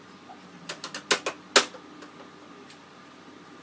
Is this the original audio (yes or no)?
yes